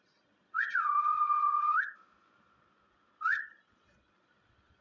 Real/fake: fake